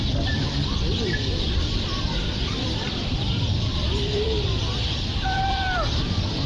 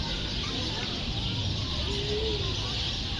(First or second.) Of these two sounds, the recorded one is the second